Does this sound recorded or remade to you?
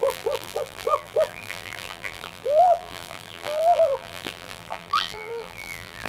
remade